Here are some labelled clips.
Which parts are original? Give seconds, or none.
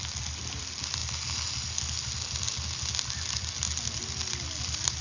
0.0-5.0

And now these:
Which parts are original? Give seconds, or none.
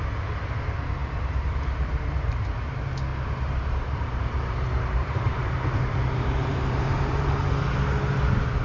0.0-1.0; 2.3-3.1; 7.5-8.6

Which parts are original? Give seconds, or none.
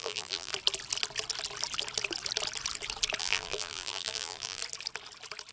0.5-3.2; 4.6-5.5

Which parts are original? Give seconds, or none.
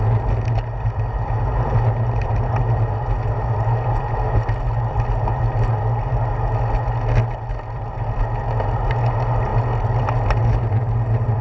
0.0-11.4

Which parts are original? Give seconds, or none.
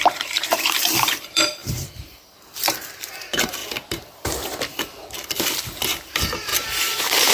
3.6-6.1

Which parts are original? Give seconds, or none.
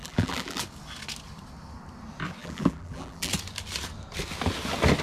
0.6-2.4; 3.3-5.0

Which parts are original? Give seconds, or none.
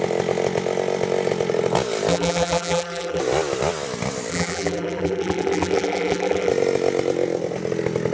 0.0-2.1; 3.2-4.3; 6.5-8.1